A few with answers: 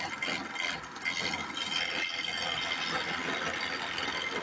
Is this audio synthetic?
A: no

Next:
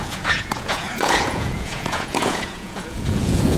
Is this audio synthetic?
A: yes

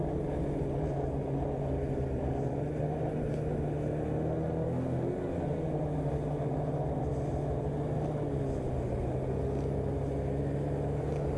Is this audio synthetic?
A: no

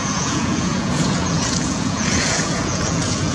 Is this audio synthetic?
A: yes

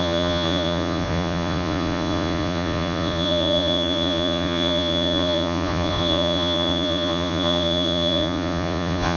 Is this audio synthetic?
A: yes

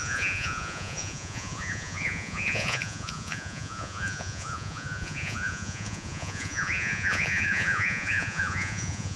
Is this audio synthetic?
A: yes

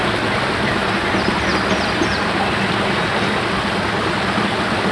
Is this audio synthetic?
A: no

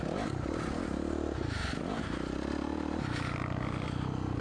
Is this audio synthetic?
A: no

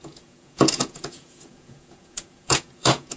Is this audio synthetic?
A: yes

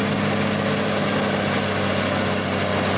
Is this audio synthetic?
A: no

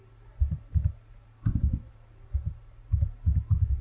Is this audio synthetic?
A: no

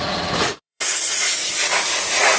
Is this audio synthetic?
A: yes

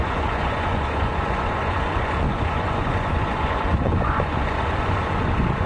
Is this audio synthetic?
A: yes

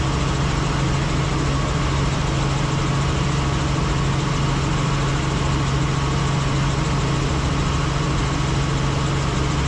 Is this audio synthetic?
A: no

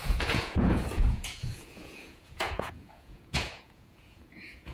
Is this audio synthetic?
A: yes